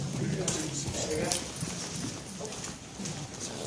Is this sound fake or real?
real